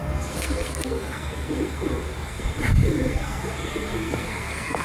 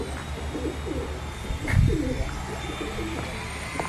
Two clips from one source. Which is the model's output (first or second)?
first